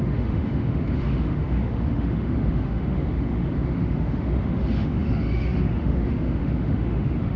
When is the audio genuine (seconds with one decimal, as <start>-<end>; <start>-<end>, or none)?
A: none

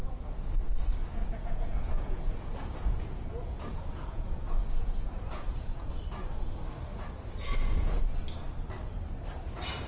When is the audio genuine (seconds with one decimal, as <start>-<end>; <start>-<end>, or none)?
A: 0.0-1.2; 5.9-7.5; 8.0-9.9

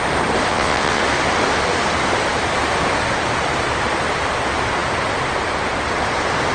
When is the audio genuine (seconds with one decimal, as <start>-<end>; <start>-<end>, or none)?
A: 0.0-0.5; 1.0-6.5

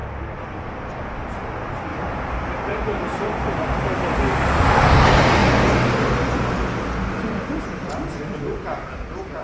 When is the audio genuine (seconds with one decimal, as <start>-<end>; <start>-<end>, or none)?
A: 0.0-1.9; 3.6-9.4

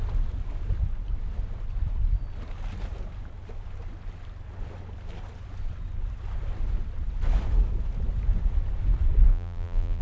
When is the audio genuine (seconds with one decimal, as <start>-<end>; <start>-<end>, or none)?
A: 0.0-9.3

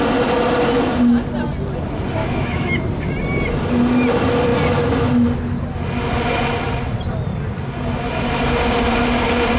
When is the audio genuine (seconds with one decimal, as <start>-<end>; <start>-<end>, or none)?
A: 0.0-2.2; 2.8-9.6

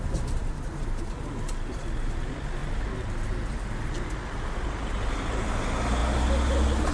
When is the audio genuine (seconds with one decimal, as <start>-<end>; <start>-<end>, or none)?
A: 0.0-6.9

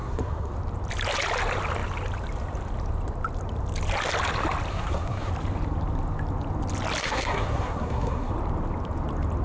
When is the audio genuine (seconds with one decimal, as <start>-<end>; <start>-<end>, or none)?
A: 0.5-4.7; 5.3-7.0; 8.3-9.4